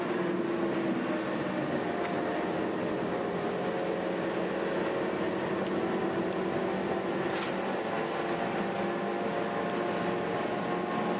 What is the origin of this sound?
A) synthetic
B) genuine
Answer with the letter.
B